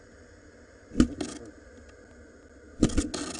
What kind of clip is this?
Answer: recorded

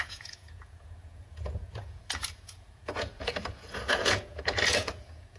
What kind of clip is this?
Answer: remade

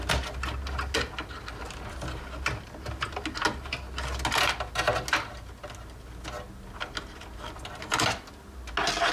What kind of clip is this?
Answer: recorded